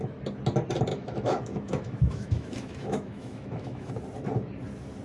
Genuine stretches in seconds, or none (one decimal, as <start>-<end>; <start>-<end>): 0.0-0.9; 3.9-5.0